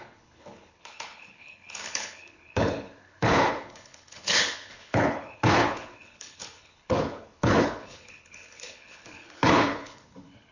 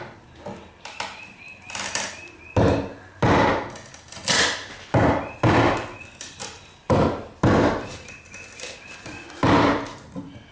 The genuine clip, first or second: second